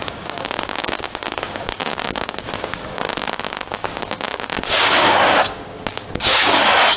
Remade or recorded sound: remade